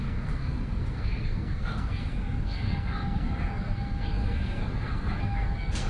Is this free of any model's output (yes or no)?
no